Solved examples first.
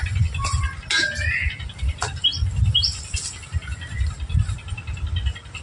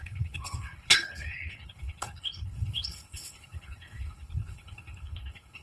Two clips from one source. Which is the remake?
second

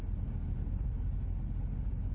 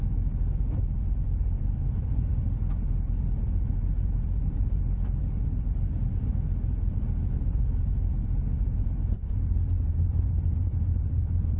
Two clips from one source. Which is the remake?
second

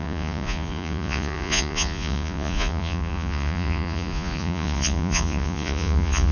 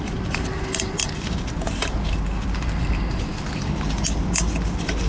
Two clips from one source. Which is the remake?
first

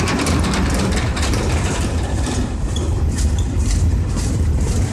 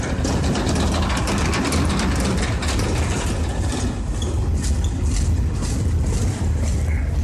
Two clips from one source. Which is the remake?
first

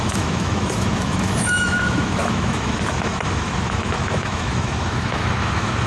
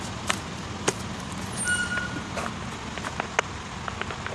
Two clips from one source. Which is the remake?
first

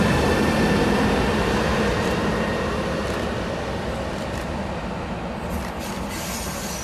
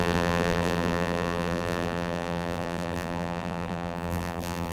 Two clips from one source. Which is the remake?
second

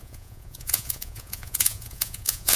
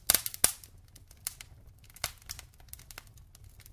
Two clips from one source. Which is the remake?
first